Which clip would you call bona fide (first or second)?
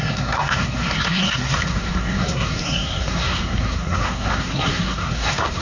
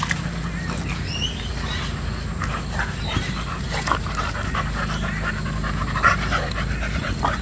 second